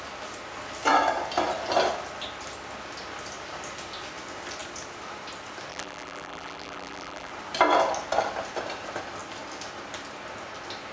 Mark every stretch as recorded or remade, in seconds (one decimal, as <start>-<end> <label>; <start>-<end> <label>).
0.0-5.7 recorded; 5.7-7.3 remade; 7.3-10.9 recorded